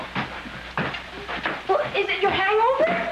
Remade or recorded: recorded